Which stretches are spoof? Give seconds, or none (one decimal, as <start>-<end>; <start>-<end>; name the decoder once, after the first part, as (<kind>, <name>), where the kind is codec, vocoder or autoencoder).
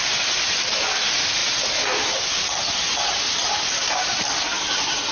none